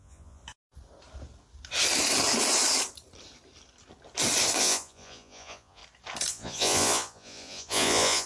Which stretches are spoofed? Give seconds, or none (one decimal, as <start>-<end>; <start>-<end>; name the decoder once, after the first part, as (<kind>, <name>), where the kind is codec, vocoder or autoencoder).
0.0-0.4 (vocoder, Vocos); 4.6-5.8; 6.3-8.3